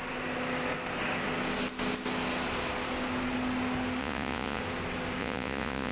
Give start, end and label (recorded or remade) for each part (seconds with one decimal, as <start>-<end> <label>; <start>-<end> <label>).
0.0-4.0 recorded; 4.0-4.6 remade; 4.6-5.2 recorded; 5.2-5.9 remade